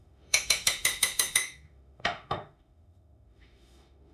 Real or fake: fake